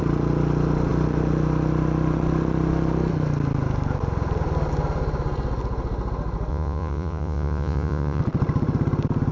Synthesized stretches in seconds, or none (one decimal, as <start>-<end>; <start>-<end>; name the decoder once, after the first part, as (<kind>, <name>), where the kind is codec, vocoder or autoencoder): 6.5-8.2 (vocoder, Vocos)